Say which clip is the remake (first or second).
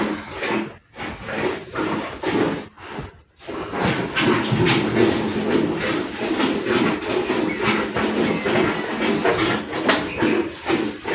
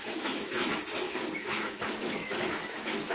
second